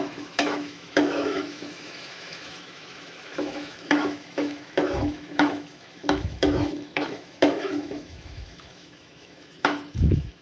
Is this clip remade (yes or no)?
yes